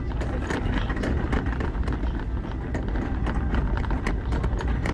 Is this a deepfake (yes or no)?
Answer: no